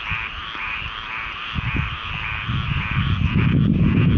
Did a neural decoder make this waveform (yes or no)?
no